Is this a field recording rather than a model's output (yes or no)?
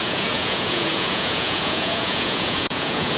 no